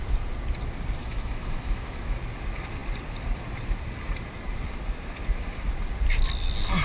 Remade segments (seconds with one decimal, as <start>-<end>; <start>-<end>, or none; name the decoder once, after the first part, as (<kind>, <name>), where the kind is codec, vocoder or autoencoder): 1.0-2.2 (autoencoder, DAC-VAE)